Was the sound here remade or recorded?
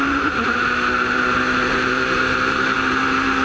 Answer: remade